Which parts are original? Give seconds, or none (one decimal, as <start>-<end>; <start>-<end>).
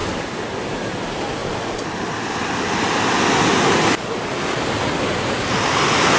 0.0-6.2